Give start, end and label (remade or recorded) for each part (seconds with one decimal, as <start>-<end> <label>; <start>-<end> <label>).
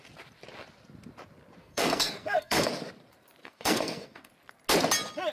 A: 0.0-1.6 recorded; 1.6-2.7 remade; 2.7-3.4 recorded; 3.4-4.3 remade; 4.3-5.3 recorded